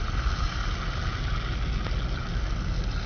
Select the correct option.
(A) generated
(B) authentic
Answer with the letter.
B